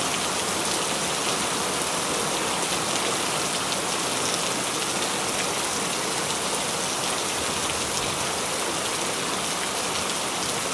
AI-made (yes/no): no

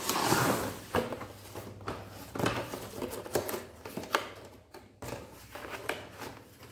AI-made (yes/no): no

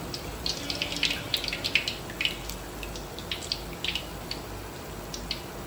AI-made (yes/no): no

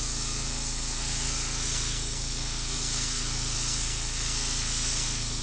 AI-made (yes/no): yes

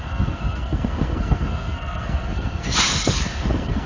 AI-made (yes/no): yes